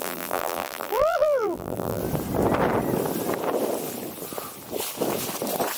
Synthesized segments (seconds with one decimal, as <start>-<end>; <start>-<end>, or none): 0.0-2.0